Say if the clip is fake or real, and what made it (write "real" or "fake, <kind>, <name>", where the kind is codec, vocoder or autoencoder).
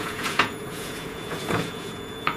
fake, vocoder, Vocos